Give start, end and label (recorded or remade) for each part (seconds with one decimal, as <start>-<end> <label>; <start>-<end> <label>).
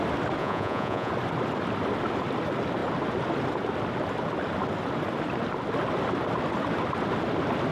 0.0-0.4 recorded; 0.4-1.1 remade; 1.1-7.7 recorded